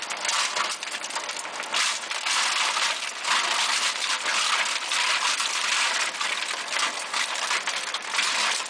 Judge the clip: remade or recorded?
recorded